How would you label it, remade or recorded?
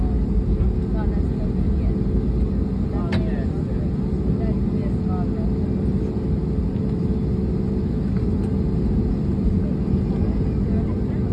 recorded